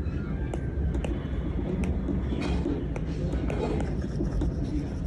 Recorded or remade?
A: recorded